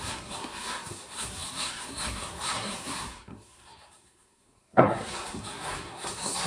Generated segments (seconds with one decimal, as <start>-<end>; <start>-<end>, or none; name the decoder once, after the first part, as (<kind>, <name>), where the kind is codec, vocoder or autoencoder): 0.0-6.5 (codec, SNAC)